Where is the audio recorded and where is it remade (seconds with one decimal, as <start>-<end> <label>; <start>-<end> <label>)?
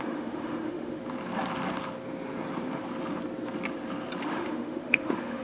0.0-1.0 remade; 1.0-4.2 recorded; 4.2-5.4 remade